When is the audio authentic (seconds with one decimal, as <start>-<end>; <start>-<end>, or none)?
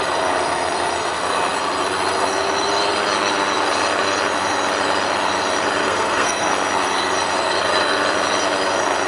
0.0-5.8; 6.5-9.1